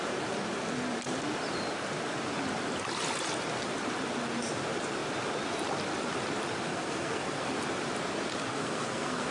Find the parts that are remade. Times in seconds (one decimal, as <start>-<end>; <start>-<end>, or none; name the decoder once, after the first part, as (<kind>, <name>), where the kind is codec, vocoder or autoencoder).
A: 6.7-7.5 (codec, SNAC); 8.5-9.3